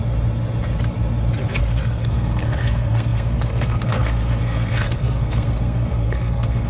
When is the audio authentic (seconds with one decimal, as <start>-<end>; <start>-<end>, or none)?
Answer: 0.0-1.6